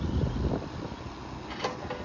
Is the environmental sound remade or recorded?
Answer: recorded